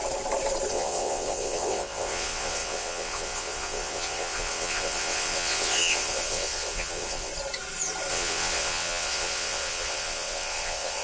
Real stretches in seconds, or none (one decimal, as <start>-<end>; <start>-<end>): 0.0-0.7; 7.3-8.1